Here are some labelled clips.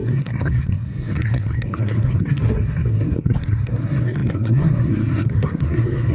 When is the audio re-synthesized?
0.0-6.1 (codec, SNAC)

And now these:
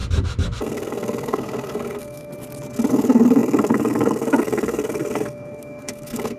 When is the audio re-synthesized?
0.6-2.3 (codec, SNAC); 2.9-6.4